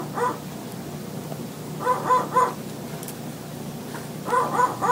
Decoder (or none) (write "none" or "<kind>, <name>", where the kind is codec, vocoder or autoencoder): none